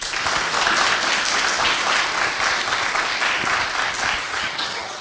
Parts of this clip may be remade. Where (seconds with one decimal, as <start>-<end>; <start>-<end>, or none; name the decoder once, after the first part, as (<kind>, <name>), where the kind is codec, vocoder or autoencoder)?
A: 4.2-5.0 (vocoder, HiFi-GAN)